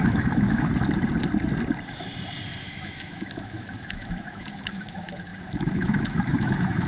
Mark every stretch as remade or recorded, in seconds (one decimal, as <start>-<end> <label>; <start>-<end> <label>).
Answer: 0.0-0.7 remade; 0.7-2.6 recorded; 2.6-6.9 remade